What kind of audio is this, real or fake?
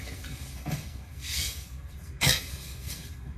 fake